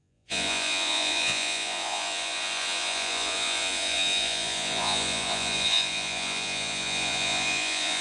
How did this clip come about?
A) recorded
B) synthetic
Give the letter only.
B